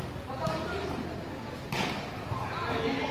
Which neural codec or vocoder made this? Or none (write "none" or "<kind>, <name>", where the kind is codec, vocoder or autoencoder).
none